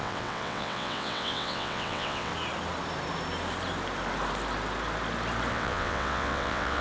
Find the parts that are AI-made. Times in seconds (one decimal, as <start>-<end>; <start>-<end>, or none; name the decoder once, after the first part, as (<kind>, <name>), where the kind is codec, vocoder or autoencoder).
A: 0.0-2.3 (vocoder, WaveNeXt); 5.5-6.8